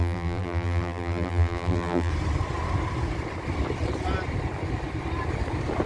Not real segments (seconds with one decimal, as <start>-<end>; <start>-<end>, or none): 0.0-2.1